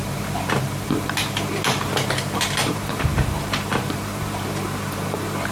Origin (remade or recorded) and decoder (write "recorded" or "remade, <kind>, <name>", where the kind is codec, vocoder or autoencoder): remade, vocoder, BigVGAN v2